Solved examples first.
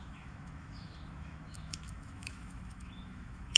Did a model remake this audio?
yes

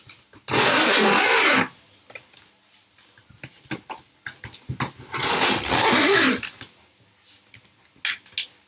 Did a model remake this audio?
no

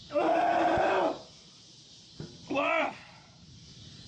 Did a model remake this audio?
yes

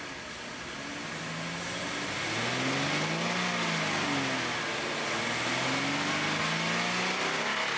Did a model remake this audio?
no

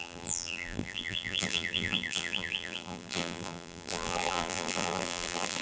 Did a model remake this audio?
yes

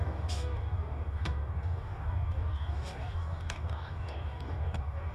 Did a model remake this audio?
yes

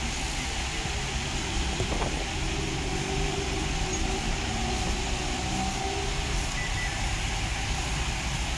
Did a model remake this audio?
no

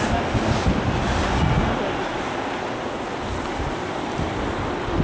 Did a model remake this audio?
no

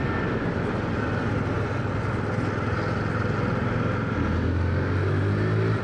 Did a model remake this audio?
no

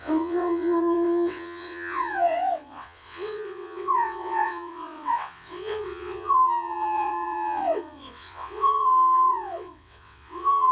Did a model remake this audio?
yes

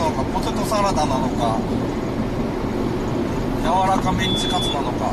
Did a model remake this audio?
no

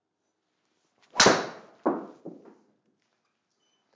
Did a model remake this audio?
no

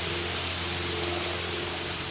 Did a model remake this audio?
no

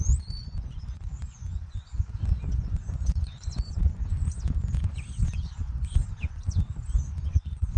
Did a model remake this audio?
yes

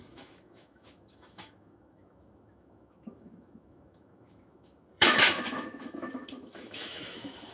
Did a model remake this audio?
yes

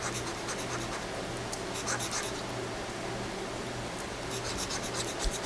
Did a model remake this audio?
no